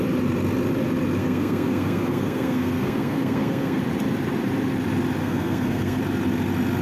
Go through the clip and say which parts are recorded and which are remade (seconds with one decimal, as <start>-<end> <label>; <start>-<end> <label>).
0.0-1.2 recorded; 1.2-3.8 remade; 3.8-5.2 recorded; 5.2-6.0 remade; 6.0-6.8 recorded